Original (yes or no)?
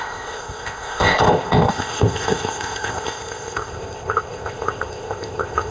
no